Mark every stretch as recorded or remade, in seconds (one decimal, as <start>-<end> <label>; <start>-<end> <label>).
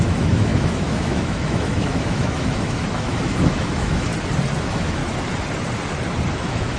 0.0-4.1 remade; 4.1-4.6 recorded; 4.6-5.0 remade; 5.0-6.3 recorded; 6.3-6.8 remade